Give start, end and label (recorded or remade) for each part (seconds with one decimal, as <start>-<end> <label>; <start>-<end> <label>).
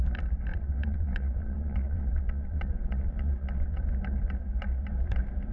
0.0-0.5 recorded; 0.5-3.8 remade; 3.8-5.5 recorded